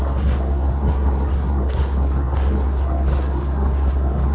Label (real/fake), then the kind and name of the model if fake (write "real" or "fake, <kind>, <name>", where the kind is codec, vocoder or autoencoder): fake, codec, SNAC